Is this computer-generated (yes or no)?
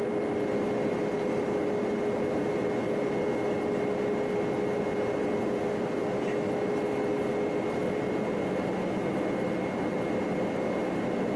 no